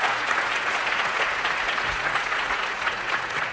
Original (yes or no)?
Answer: no